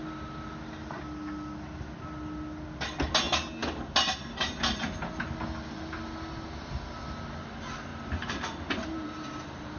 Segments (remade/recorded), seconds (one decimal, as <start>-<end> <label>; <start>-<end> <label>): 0.0-7.9 recorded; 7.9-9.8 remade